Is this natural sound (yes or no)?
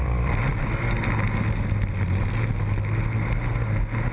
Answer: yes